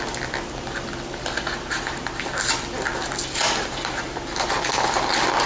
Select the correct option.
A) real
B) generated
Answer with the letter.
A